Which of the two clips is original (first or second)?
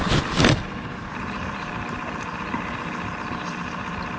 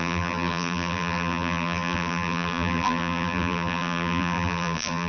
first